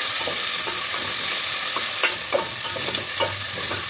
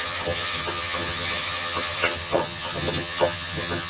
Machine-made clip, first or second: second